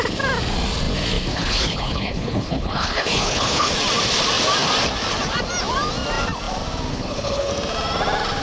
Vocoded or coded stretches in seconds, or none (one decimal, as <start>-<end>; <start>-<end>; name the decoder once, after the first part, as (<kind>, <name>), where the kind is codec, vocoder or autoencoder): 1.3-3.7 (codec, HILCodec); 6.9-7.5